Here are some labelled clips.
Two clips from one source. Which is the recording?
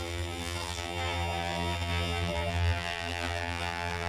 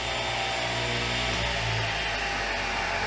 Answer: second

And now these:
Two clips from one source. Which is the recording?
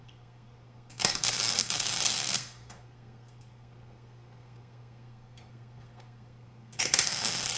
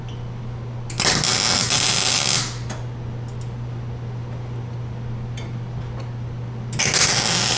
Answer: second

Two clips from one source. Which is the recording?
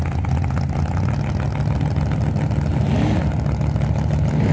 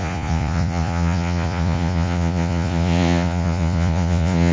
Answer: first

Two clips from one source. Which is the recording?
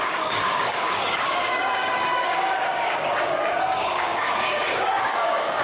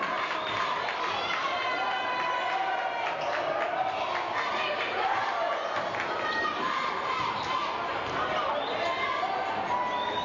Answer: second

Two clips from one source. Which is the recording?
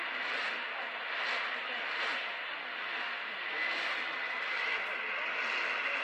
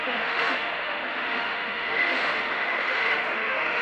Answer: first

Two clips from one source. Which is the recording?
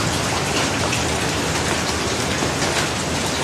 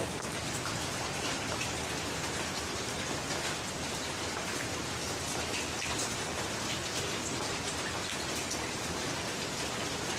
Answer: first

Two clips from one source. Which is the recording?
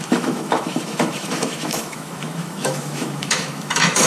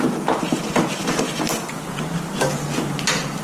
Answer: second